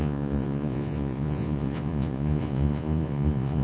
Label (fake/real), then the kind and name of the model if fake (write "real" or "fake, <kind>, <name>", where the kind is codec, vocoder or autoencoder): fake, vocoder, Vocos